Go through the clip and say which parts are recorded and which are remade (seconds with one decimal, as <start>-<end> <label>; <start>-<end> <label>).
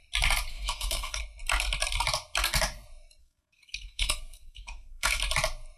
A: 0.0-0.5 recorded; 0.5-1.2 remade; 1.2-3.2 recorded; 3.2-5.2 remade; 5.2-5.8 recorded